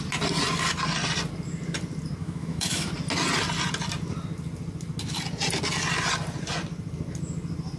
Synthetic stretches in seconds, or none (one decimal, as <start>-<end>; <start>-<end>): 2.2-2.9